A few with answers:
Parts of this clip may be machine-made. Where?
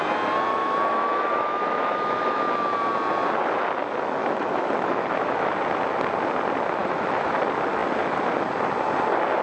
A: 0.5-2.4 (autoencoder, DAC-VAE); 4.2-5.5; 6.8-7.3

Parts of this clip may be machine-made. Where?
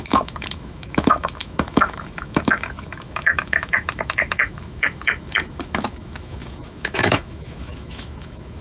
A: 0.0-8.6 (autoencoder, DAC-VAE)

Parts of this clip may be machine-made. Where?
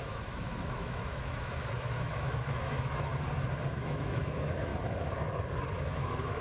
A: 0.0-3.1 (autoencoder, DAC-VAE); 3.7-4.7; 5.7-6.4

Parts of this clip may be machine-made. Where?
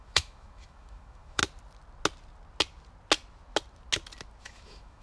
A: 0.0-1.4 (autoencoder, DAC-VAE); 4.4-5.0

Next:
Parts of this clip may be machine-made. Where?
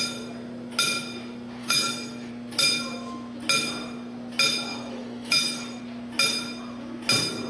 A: 1.6-2.3 (autoencoder, DAC-VAE); 4.7-5.8